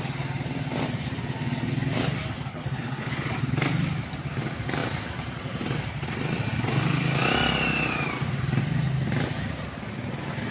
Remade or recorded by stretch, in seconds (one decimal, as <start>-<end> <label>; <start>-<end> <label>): 0.0-2.5 recorded; 2.5-3.1 remade; 3.1-10.5 recorded